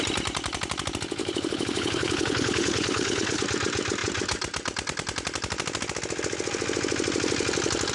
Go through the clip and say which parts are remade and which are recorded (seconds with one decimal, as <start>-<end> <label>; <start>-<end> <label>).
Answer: 0.0-1.2 recorded; 1.2-3.4 remade; 3.4-7.9 recorded